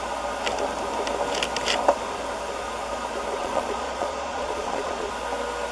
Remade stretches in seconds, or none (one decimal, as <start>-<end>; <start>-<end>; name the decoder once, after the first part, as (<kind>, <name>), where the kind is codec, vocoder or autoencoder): 3.4-5.1 (vocoder, Vocos)